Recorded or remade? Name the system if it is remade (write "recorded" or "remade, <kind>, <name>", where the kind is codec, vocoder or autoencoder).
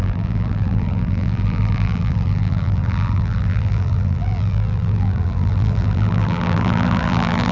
remade, vocoder, BigVGAN v2